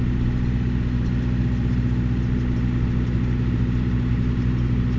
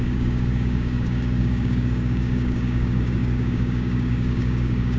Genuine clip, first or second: first